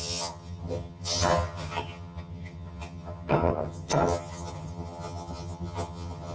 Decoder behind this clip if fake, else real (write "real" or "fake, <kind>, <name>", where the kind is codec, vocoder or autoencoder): fake, vocoder, HiFi-GAN